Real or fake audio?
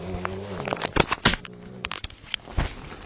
real